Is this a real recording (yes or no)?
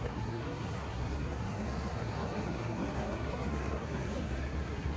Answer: no